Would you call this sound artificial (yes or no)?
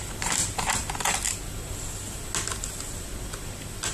no